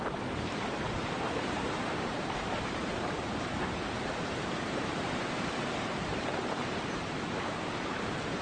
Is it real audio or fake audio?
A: fake